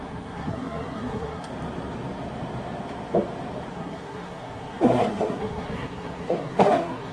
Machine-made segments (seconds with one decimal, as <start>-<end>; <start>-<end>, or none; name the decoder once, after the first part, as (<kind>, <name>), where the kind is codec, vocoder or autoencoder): 0.0-1.5 (codec, SNAC); 3.7-7.1